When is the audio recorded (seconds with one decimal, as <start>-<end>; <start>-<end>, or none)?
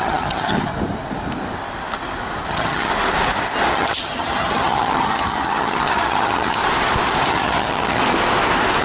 0.7-2.5; 2.9-3.7; 6.6-7.3; 8.0-8.8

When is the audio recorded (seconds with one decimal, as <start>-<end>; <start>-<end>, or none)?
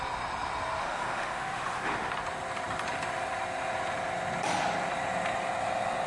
0.0-0.8; 2.1-6.1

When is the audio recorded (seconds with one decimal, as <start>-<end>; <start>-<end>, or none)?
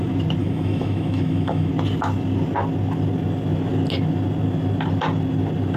0.0-0.4; 1.7-5.8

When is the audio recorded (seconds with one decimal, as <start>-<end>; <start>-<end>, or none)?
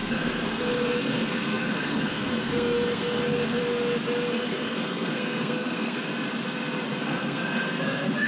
3.6-4.3; 6.1-7.0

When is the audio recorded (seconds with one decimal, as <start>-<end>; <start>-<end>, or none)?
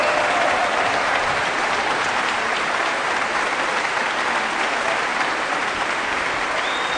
0.0-0.6; 3.8-5.1; 6.3-7.0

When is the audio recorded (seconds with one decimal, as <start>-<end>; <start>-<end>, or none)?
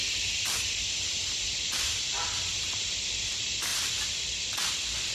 3.7-5.1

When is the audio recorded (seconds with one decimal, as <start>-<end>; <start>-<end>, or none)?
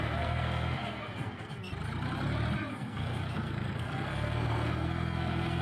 1.7-2.7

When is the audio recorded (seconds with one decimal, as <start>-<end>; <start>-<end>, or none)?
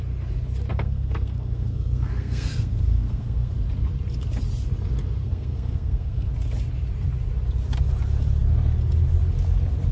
0.0-0.7; 3.5-5.2; 6.3-9.9